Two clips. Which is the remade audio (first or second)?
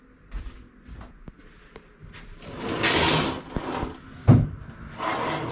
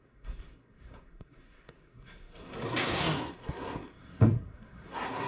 second